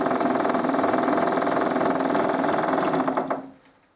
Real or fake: real